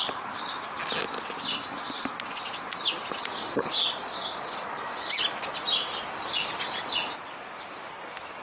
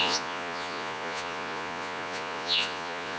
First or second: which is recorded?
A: first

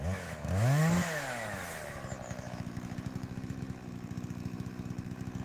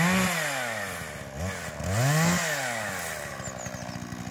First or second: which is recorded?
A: second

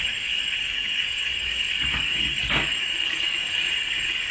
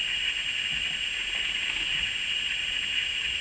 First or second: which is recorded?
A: second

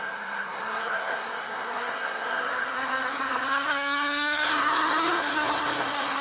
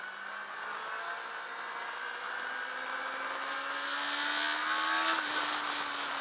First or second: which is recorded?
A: second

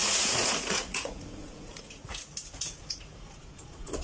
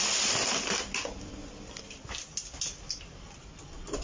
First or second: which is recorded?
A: second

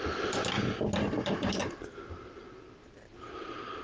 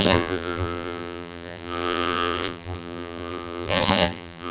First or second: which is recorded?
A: first